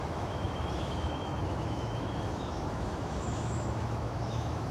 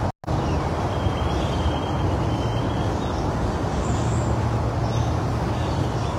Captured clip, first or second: second